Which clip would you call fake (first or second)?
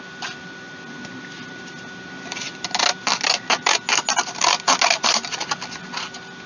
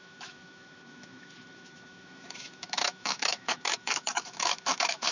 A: second